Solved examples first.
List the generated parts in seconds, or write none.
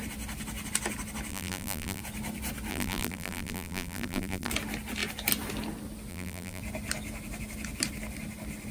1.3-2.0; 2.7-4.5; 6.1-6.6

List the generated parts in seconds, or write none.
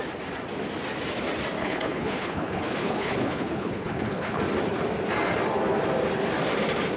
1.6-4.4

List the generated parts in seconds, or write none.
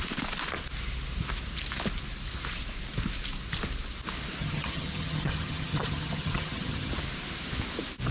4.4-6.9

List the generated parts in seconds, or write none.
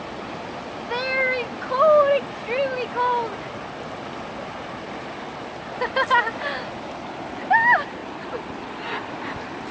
none